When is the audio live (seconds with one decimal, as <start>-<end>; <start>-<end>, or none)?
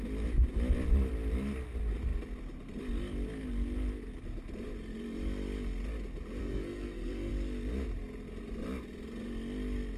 0.0-6.4; 7.3-10.0